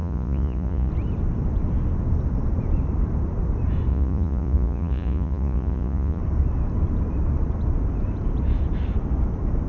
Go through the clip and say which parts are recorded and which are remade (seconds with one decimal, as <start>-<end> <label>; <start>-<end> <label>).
0.0-0.9 remade; 0.9-3.9 recorded; 3.9-6.2 remade; 6.2-9.7 recorded